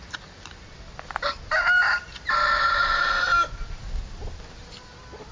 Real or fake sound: real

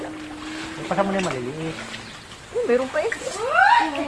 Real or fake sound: real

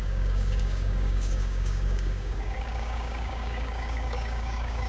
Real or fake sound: fake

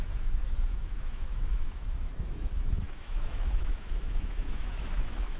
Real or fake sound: fake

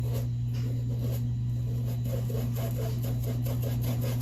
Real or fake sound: real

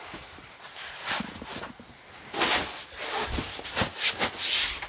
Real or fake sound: real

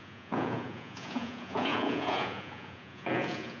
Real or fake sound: fake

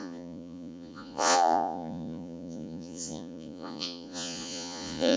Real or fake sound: fake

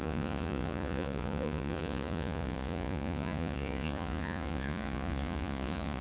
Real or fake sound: fake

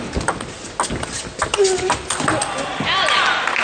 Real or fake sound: real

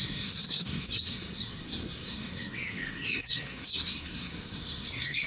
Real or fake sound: fake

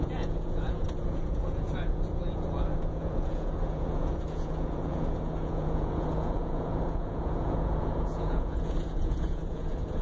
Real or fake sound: fake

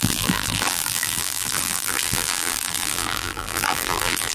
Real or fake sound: fake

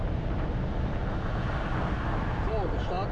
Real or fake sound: real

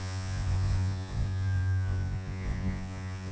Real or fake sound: fake